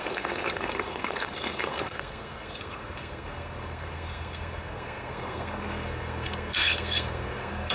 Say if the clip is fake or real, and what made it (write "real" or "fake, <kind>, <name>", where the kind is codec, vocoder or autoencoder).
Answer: fake, codec, SNAC